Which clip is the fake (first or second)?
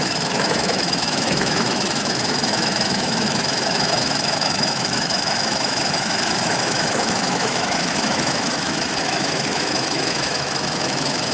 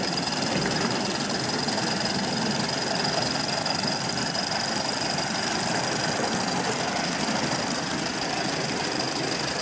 first